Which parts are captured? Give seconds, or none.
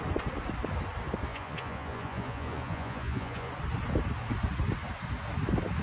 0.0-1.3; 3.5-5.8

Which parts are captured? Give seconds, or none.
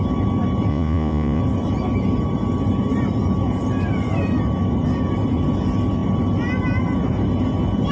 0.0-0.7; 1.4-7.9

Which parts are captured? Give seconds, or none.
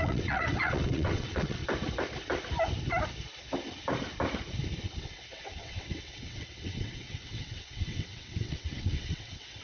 1.6-5.0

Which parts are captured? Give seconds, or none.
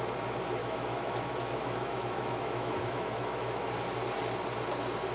0.0-0.6; 3.7-5.1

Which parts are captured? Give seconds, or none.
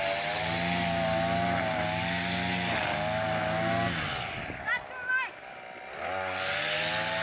0.0-7.2